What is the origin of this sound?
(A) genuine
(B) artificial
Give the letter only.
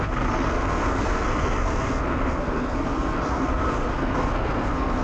B